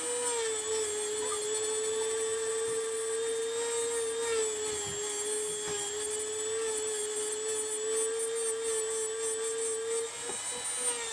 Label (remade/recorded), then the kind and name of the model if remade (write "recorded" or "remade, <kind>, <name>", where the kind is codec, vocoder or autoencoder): recorded